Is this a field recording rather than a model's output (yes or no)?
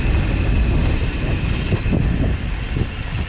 yes